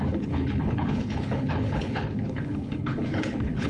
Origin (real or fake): fake